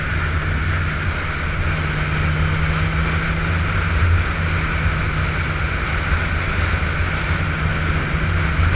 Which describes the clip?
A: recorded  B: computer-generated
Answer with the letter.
A